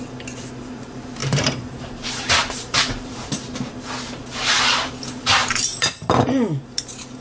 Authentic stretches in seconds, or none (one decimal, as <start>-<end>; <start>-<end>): 0.0-1.2; 3.3-5.4; 6.1-7.2